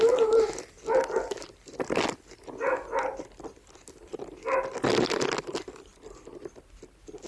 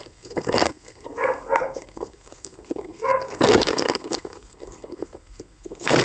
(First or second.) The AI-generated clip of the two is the second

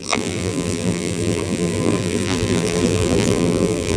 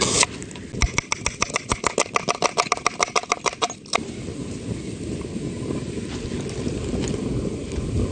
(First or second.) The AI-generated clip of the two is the first